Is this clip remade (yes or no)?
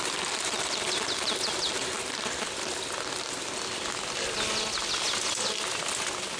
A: no